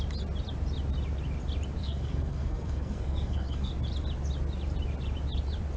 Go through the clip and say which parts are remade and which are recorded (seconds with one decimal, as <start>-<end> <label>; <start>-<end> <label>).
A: 0.0-1.8 recorded; 1.8-3.7 remade; 3.7-5.8 recorded